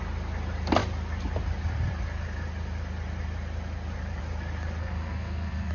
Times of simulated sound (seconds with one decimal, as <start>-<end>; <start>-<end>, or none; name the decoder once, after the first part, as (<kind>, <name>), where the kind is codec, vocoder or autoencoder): 4.8-5.7 (codec, SNAC)